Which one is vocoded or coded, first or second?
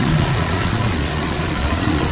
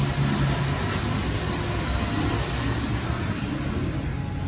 first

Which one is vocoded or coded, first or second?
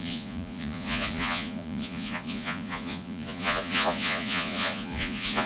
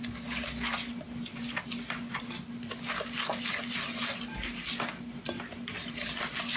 first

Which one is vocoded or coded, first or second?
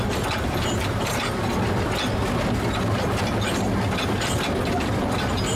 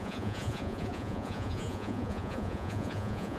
second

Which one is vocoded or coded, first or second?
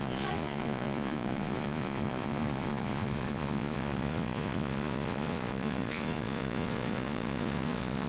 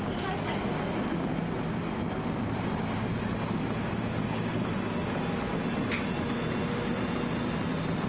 first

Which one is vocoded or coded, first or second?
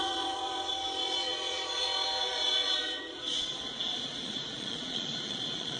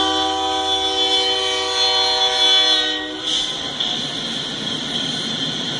first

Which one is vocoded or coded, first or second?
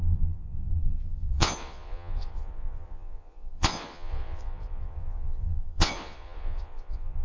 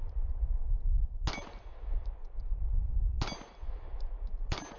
first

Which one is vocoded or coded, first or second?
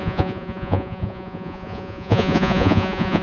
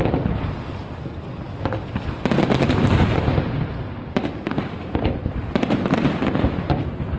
first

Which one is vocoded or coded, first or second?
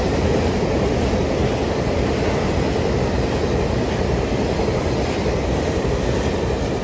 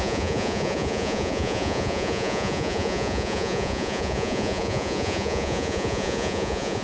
second